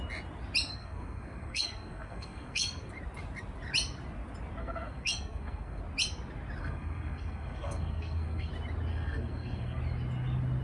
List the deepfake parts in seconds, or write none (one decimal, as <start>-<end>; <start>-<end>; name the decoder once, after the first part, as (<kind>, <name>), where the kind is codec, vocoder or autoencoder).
0.7-2.9 (codec, SNAC); 4.6-5.8; 6.6-8.5; 8.9-9.8

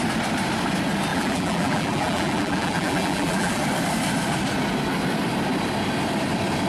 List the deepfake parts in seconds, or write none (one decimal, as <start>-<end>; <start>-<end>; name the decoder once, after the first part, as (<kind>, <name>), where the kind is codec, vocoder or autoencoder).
1.1-3.6 (vocoder, BigVGAN v2)

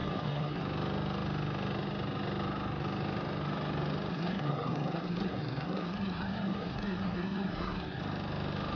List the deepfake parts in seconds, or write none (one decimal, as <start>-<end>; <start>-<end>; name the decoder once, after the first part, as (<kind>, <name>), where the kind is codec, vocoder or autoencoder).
0.0-0.6 (codec, SNAC); 4.1-8.0

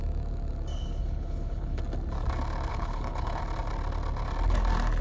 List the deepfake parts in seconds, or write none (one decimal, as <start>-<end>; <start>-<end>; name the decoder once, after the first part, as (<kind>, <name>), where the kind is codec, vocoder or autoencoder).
0.7-1.8 (codec, HILCodec); 2.7-3.4

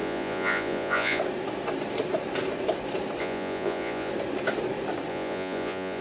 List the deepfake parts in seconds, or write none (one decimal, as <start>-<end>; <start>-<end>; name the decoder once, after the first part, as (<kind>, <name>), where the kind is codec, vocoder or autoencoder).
0.0-1.2 (vocoder, Vocos); 3.2-4.1; 5.1-6.0

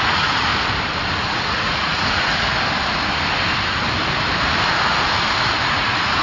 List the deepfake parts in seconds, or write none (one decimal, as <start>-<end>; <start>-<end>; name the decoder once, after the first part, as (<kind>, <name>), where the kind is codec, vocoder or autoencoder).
0.0-0.5 (vocoder, Vocos); 1.3-2.5; 5.7-6.2

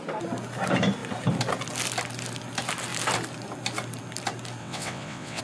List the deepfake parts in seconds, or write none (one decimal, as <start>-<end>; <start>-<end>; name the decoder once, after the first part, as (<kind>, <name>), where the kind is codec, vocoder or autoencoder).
4.6-5.4 (vocoder, WaveNeXt)

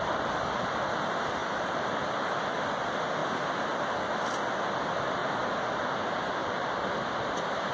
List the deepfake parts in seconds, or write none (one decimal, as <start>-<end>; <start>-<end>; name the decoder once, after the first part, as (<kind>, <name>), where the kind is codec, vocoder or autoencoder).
1.4-2.0 (vocoder, BigVGAN v2); 6.4-6.9